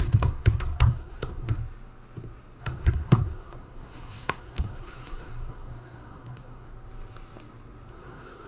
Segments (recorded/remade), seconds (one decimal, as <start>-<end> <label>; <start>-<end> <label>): 0.0-1.6 remade; 1.6-2.6 recorded; 2.6-6.7 remade; 6.7-7.9 recorded; 7.9-8.5 remade